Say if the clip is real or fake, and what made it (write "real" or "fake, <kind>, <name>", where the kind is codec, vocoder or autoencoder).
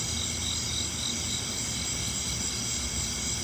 real